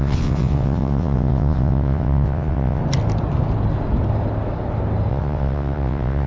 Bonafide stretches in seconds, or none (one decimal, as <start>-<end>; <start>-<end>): 2.8-5.1